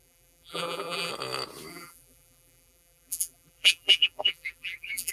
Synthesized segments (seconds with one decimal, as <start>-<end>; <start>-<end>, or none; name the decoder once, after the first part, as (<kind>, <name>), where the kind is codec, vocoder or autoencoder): 0.0-1.1 (vocoder, BigVGAN v2); 1.7-5.1